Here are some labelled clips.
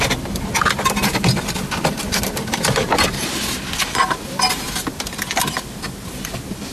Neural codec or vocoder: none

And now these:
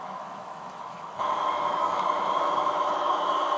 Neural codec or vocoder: autoencoder, DAC-VAE